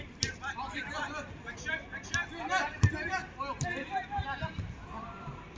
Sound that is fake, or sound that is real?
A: real